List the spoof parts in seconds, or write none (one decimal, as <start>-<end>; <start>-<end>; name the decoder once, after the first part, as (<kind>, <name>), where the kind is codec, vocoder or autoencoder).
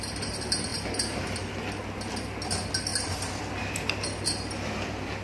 none